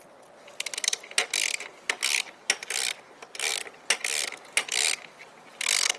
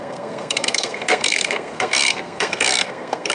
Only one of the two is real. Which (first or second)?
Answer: first